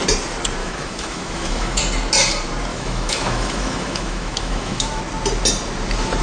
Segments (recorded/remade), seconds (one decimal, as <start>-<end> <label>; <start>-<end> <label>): 0.0-0.6 recorded; 0.6-1.8 remade; 1.8-2.7 recorded; 2.7-5.0 remade; 5.0-6.2 recorded